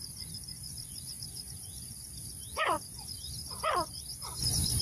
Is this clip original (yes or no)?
no